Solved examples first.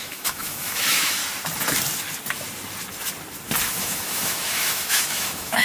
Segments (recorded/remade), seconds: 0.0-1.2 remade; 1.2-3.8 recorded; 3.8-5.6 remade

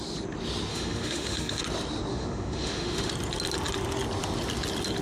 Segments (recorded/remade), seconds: 0.0-0.7 recorded; 0.7-1.6 remade; 1.6-2.1 recorded; 2.1-3.1 remade; 3.1-5.0 recorded

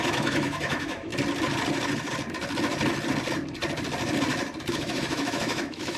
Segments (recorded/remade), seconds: 0.0-1.1 remade; 1.1-4.7 recorded; 4.7-6.0 remade

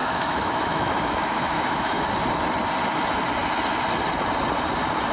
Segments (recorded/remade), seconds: 0.0-2.1 remade; 2.1-5.1 recorded

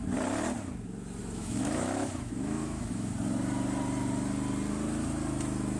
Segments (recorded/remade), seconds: 0.0-1.2 recorded; 1.2-3.1 remade; 3.1-5.8 recorded

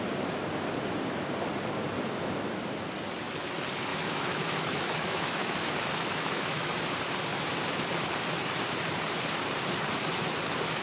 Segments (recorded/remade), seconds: 0.0-3.9 recorded; 3.9-6.7 remade; 6.7-10.8 recorded

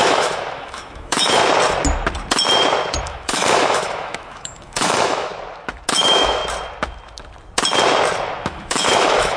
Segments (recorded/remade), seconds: 0.0-1.4 remade; 1.4-3.0 recorded; 3.0-5.3 remade; 5.3-5.9 recorded; 5.9-6.4 remade; 6.4-8.5 recorded; 8.5-9.4 remade